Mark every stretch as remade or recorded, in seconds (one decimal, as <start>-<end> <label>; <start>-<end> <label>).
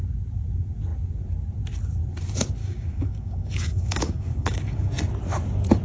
0.0-2.6 recorded; 2.6-4.9 remade; 4.9-5.8 recorded